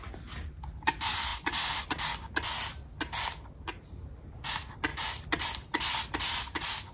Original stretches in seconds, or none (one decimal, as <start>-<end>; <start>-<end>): 0.0-6.9